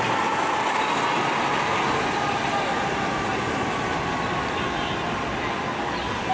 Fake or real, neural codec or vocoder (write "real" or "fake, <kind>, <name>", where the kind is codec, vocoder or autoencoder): real